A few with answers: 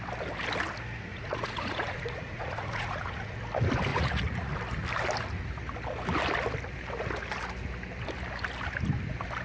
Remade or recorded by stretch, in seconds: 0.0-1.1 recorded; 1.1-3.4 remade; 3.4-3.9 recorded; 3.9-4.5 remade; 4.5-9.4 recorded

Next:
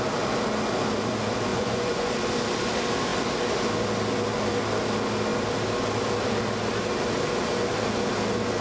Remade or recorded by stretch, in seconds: 0.0-1.5 recorded; 1.5-2.1 remade; 2.1-8.6 recorded